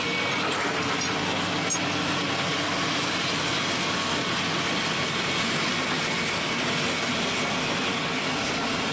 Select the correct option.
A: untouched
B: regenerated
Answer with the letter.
A